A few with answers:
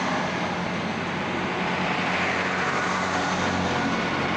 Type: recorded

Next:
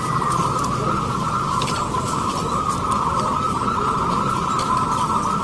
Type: recorded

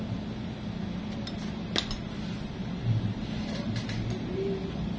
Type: recorded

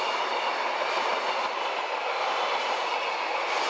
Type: recorded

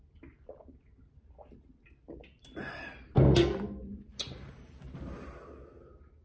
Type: recorded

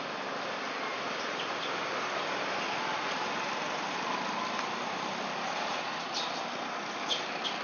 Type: recorded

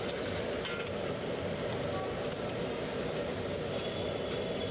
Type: recorded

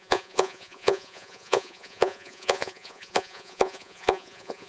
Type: remade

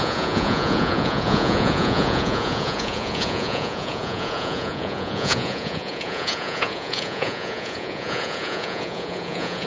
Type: remade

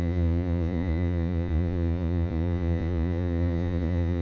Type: remade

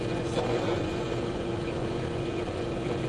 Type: remade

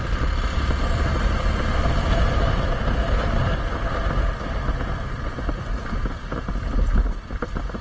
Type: recorded